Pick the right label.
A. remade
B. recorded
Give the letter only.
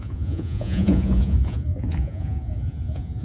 A